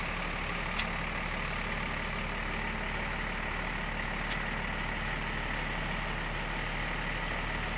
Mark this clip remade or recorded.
recorded